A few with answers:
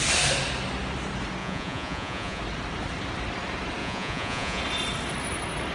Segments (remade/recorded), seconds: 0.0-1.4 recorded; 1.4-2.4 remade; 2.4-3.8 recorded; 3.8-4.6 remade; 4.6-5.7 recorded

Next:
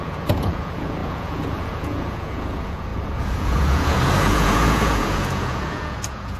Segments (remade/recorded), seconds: 0.0-6.4 remade

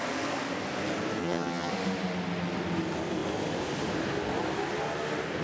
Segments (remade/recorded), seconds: 0.0-1.2 recorded; 1.2-1.7 remade; 1.7-5.4 recorded